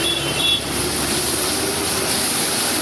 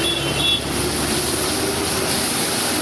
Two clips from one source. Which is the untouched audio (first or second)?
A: second